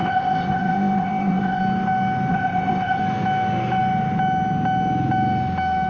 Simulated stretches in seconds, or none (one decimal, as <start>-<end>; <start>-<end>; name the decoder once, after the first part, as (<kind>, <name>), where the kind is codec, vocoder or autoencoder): 0.0-1.6 (codec, ZipCodec); 2.3-3.0